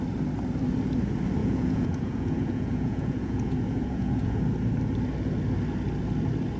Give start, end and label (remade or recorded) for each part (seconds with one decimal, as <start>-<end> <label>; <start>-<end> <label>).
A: 0.0-1.4 recorded; 1.4-4.4 remade; 4.4-6.6 recorded